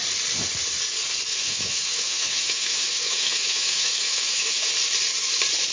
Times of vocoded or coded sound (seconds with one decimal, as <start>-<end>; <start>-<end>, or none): 1.3-4.7